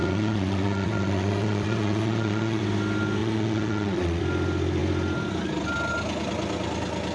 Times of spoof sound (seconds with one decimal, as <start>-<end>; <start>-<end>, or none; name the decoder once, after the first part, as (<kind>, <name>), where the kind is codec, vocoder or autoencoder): 0.0-2.6 (vocoder, Vocos); 3.2-4.2